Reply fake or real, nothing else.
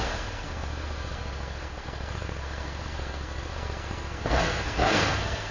fake